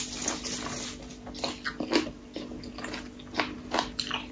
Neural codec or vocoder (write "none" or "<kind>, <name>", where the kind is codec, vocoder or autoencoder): none